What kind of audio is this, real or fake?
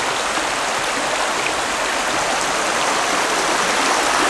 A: real